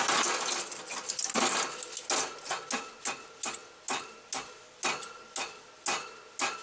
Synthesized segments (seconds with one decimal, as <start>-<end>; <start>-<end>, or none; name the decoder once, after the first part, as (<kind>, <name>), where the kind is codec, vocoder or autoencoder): none